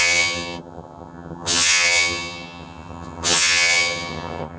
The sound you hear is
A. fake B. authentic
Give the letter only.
A